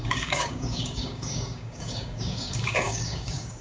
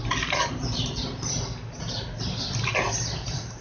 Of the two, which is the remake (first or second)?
first